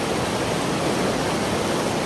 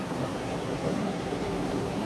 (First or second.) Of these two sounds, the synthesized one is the second